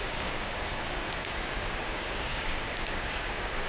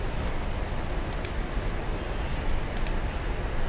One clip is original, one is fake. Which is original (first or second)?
second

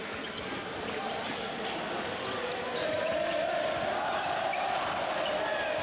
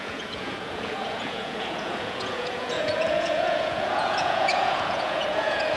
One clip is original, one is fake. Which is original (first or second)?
first